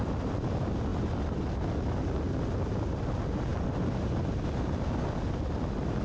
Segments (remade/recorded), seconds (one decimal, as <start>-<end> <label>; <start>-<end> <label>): 0.0-6.0 recorded